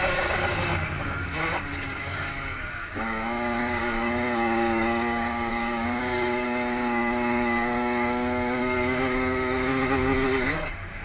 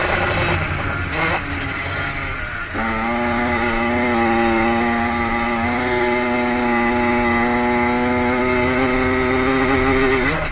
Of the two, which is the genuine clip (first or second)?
second